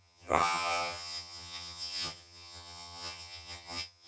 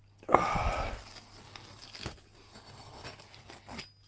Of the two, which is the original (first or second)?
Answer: second